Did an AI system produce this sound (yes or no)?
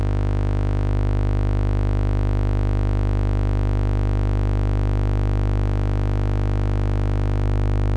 no